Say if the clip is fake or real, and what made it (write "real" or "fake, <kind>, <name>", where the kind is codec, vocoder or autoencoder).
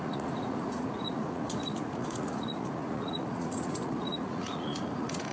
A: fake, vocoder, Vocos